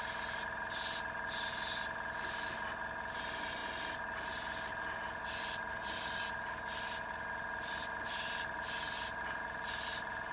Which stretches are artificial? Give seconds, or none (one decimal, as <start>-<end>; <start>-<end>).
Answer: none